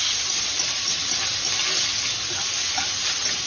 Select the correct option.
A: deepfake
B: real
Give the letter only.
B